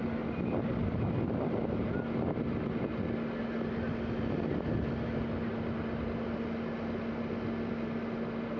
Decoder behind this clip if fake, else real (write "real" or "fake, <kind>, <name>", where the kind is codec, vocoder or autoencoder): real